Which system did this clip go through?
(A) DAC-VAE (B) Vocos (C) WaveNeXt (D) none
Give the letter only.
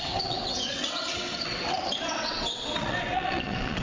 C